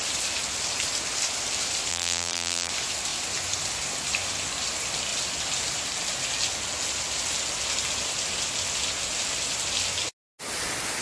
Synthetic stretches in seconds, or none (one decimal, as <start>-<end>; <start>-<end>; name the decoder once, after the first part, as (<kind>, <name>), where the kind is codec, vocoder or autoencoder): 1.9-2.7 (vocoder, BigVGAN v2)